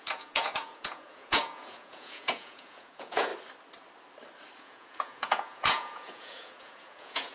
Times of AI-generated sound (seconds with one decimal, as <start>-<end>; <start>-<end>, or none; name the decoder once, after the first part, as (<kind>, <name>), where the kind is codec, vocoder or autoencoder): 0.0-3.3 (vocoder, Vocos); 4.6-7.3

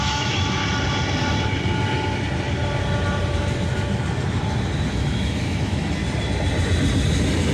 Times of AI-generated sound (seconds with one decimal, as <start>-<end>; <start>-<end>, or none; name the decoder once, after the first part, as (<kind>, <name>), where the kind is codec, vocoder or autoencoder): 0.0-0.6 (autoencoder, DAC-VAE); 4.9-6.0